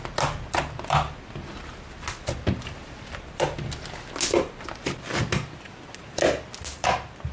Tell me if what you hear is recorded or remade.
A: recorded